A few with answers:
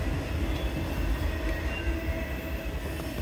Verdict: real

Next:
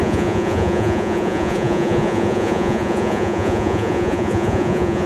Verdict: fake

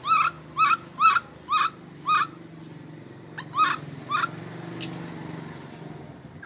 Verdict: real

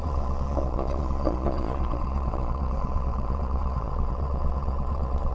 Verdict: fake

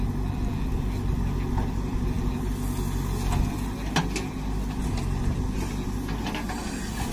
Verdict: real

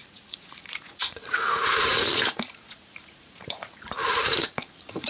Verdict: fake